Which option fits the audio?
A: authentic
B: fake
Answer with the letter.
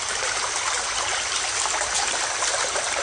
A